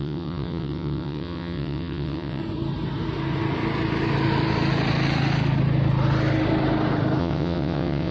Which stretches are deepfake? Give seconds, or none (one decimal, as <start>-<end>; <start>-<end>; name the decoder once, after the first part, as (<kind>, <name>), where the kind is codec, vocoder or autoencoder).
0.0-2.4 (vocoder, WaveNeXt); 7.2-8.1